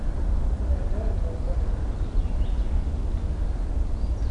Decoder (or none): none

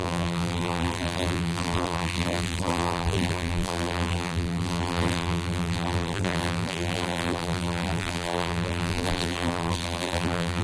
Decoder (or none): vocoder, BigVGAN v2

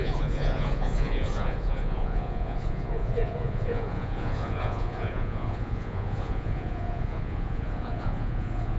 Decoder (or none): vocoder, Vocos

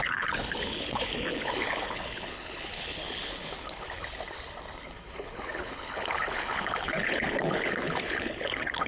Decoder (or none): codec, HILCodec